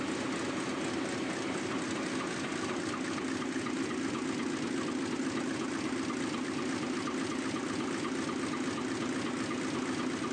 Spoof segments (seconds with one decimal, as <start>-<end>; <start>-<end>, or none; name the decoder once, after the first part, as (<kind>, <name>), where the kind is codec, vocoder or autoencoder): none